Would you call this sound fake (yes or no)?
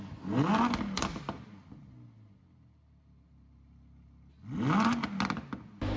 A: no